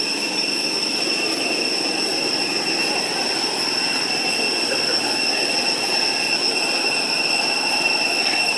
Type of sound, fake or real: real